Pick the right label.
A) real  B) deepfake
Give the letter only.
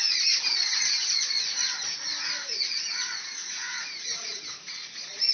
B